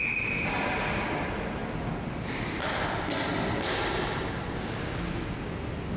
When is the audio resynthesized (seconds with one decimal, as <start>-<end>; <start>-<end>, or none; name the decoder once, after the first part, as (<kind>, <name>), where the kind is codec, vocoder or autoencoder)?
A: none